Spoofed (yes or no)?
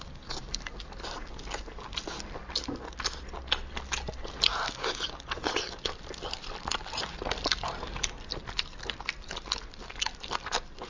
no